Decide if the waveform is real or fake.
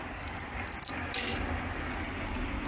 real